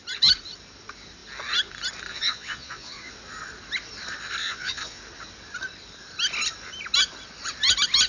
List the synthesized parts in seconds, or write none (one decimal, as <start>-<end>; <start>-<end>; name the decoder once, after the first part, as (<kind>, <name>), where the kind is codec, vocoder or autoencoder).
2.1-3.1 (vocoder, Vocos); 4.4-5.0